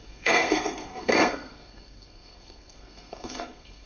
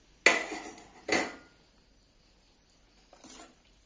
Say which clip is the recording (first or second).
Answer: second